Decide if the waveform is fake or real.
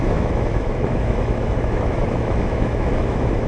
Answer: fake